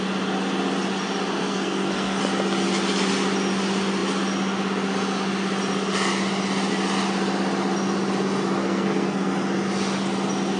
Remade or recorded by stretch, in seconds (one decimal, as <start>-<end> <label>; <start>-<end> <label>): 0.0-1.4 recorded; 1.4-2.2 remade; 2.2-8.6 recorded; 8.6-9.3 remade; 9.3-10.6 recorded